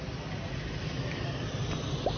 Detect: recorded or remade recorded